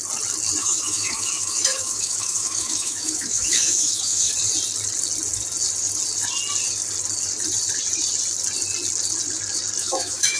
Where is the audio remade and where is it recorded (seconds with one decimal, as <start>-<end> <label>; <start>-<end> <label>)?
0.0-0.6 recorded; 0.6-4.3 remade; 4.3-9.8 recorded; 9.8-10.4 remade